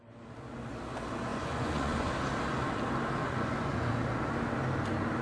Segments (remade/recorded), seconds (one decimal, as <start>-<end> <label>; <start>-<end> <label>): 0.0-1.3 recorded; 1.3-2.1 remade; 2.1-3.2 recorded; 3.2-3.9 remade; 3.9-5.2 recorded